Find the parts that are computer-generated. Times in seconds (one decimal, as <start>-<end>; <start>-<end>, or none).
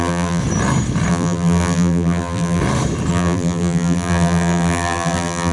0.0-0.4; 1.1-2.6; 3.1-5.5